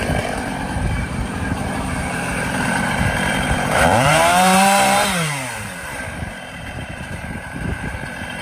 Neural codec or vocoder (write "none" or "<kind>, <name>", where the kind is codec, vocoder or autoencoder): vocoder, BigVGAN v2